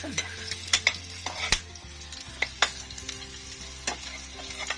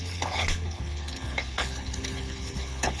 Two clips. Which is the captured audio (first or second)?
first